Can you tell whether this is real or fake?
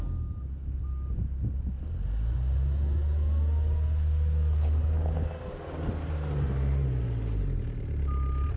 real